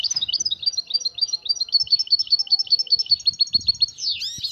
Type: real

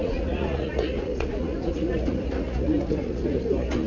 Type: fake